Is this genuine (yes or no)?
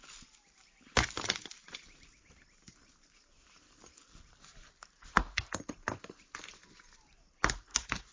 yes